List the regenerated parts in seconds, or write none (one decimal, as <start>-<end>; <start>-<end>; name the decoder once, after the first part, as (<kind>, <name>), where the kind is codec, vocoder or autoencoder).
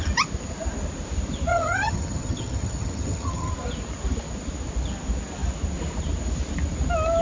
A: 1.5-3.5 (vocoder, HiFi-GAN)